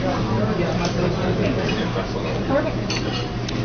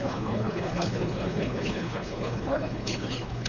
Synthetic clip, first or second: second